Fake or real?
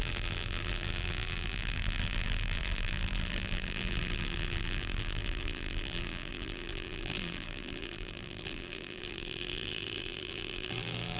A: fake